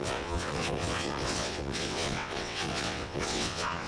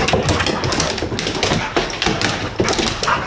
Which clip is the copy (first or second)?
first